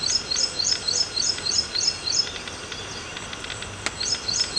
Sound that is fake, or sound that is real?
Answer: real